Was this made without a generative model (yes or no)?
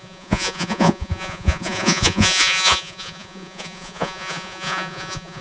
no